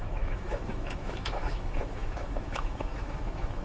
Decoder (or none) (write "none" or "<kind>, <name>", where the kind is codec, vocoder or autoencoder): autoencoder, DAC-VAE